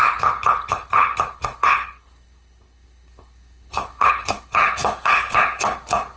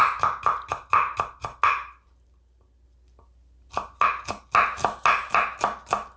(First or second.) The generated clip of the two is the first